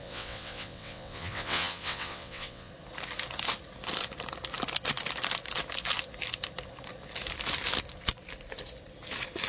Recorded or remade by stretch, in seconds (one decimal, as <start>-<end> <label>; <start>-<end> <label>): 0.0-2.7 remade; 2.7-9.5 recorded